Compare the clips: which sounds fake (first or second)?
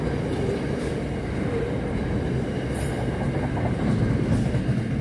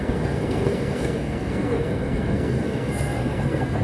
second